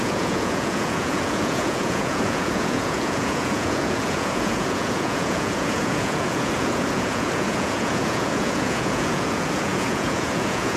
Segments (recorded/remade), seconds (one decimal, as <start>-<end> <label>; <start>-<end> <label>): 0.0-10.8 remade